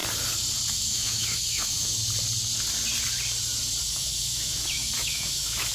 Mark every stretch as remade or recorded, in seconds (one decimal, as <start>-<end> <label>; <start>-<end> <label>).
0.0-0.7 recorded; 0.7-2.0 remade; 2.0-3.9 recorded; 3.9-5.7 remade